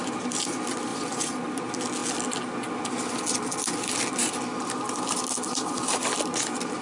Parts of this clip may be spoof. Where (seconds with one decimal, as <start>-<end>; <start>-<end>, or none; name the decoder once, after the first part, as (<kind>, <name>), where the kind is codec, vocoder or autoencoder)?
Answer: none